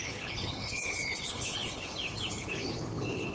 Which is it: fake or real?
fake